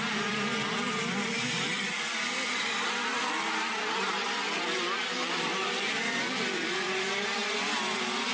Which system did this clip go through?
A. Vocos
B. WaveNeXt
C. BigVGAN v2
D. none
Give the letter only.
C